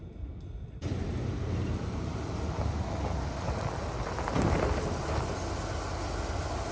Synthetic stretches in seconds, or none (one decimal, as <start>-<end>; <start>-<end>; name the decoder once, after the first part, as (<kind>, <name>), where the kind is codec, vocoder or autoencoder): none